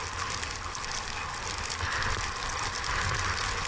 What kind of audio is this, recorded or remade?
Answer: recorded